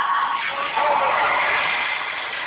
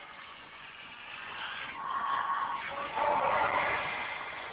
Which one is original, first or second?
first